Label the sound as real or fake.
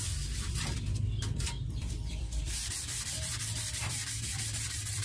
fake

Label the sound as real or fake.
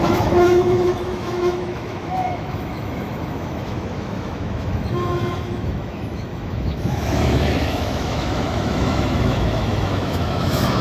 fake